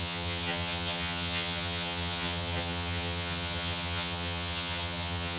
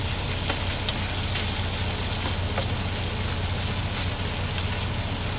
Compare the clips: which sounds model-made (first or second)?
first